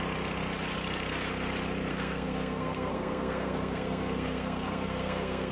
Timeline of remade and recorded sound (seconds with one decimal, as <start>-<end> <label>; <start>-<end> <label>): 0.0-1.9 recorded; 1.9-5.5 remade